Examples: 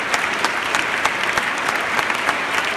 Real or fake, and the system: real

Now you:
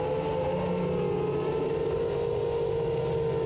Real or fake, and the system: real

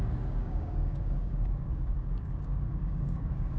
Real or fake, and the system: fake, codec, DAC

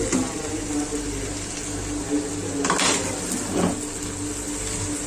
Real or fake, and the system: real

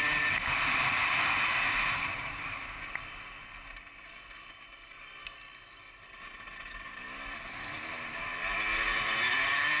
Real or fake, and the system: real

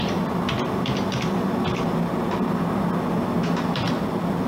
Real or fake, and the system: real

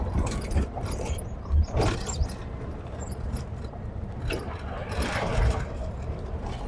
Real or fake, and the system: fake, vocoder, BigVGAN v2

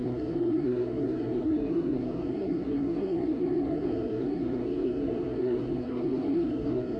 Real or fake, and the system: fake, codec, SNAC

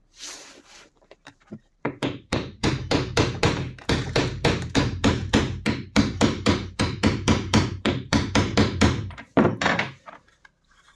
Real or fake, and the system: fake, vocoder, BigVGAN v2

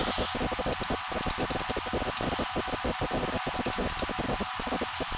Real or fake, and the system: real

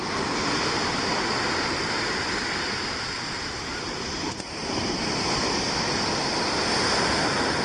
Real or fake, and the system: real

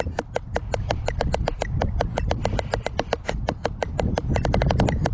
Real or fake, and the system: real